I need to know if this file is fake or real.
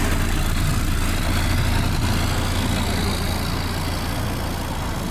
real